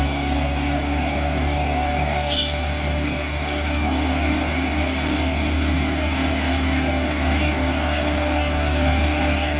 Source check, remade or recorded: remade